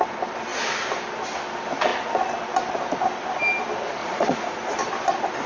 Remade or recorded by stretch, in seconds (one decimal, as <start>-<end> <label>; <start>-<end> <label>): 0.0-4.0 recorded; 4.0-4.8 remade; 4.8-5.5 recorded